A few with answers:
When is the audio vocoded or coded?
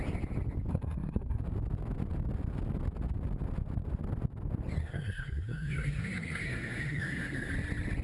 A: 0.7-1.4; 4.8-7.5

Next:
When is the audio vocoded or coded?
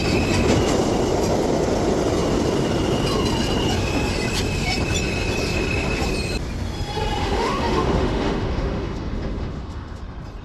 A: 7.2-10.0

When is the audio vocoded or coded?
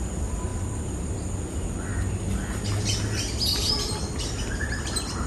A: none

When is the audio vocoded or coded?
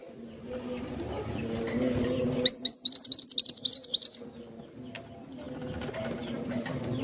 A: none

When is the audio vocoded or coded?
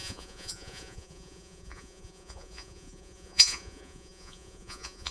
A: 0.0-5.1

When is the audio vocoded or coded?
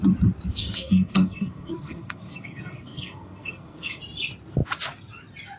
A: 0.6-4.0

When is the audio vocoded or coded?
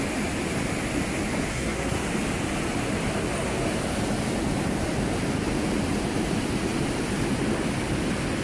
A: 1.5-2.0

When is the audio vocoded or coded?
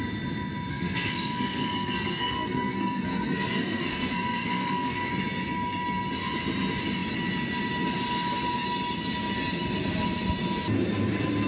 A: 0.7-5.1